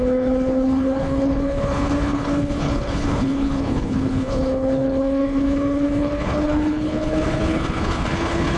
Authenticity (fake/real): fake